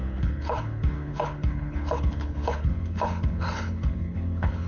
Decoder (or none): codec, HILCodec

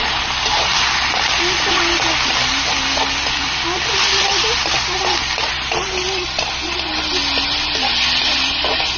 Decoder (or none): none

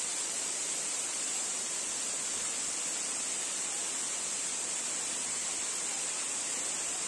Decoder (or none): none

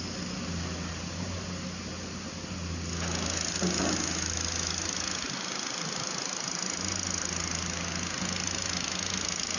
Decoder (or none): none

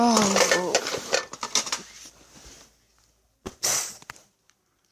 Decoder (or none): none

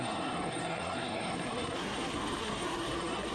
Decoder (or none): codec, SNAC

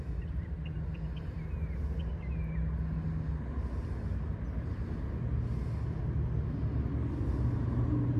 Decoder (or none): none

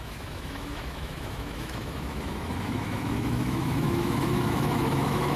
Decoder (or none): autoencoder, DAC-VAE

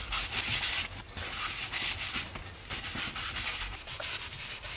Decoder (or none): none